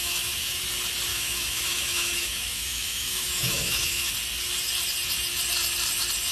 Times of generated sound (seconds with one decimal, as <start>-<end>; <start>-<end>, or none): 0.0-0.6; 1.1-4.1